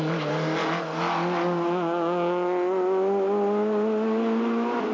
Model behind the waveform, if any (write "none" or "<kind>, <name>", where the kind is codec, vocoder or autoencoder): none